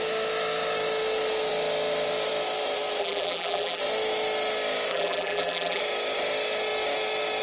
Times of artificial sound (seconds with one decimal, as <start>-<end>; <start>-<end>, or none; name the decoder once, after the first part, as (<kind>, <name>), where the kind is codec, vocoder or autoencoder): 3.0-3.8 (vocoder, BigVGAN v2); 4.9-5.8